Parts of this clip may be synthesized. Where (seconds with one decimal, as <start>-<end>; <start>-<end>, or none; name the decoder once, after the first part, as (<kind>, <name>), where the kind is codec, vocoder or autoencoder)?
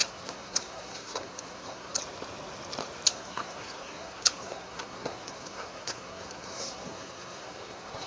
0.0-2.0 (codec, SNAC); 3.1-8.1